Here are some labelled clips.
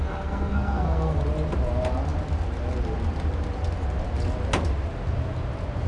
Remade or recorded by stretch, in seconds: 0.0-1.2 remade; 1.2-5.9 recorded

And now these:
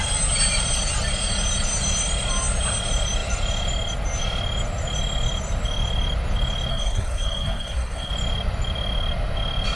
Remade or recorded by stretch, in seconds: 0.0-6.7 recorded; 6.7-8.1 remade; 8.1-9.8 recorded

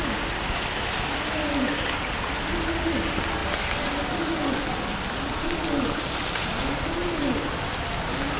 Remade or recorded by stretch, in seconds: 0.0-8.4 recorded

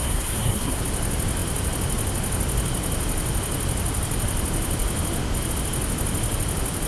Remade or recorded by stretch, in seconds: 0.0-0.8 remade; 0.8-6.9 recorded

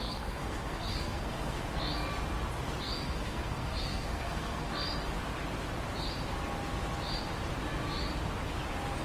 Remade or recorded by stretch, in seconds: 0.0-1.8 remade; 1.8-2.8 recorded; 2.8-4.7 remade; 4.7-9.0 recorded

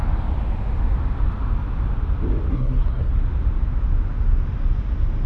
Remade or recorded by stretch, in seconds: 0.0-2.5 recorded; 2.5-3.1 remade; 3.1-5.3 recorded